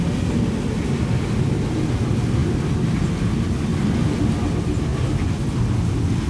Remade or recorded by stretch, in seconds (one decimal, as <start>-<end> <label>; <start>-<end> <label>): 0.0-3.7 recorded; 3.7-4.3 remade; 4.3-6.3 recorded